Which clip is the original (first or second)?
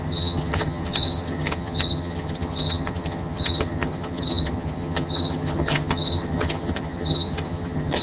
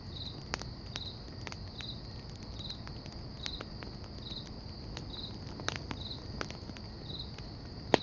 second